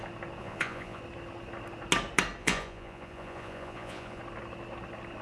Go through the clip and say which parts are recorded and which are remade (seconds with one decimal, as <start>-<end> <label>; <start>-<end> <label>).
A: 0.0-0.4 recorded; 0.4-1.0 remade; 1.0-2.4 recorded; 2.4-4.2 remade; 4.2-5.2 recorded